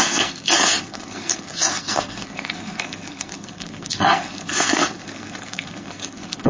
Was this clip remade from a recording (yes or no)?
yes